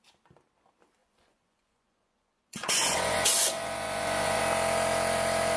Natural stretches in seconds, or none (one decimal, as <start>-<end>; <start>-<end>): 0.0-1.0; 4.4-5.6